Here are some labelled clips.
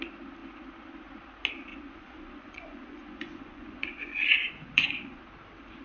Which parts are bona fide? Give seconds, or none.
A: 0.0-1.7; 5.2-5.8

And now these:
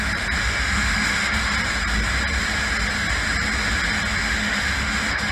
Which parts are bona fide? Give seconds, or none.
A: 0.0-0.4; 1.5-4.2

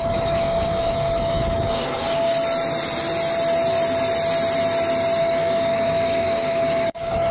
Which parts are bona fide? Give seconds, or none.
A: 2.3-5.2

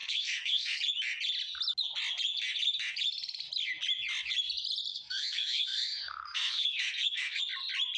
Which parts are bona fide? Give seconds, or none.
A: 0.8-4.9; 7.4-8.0

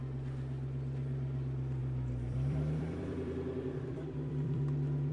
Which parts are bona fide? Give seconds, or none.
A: 0.0-1.8

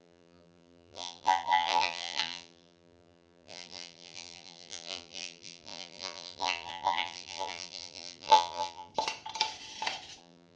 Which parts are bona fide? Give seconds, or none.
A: 8.9-10.2

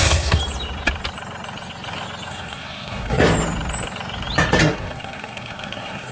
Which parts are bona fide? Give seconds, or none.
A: 0.4-2.3; 3.2-4.6